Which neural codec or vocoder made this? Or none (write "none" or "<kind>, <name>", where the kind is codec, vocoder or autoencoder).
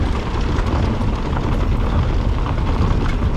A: none